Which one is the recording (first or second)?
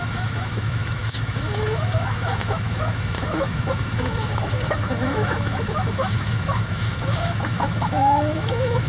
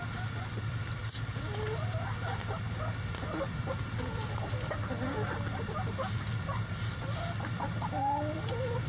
second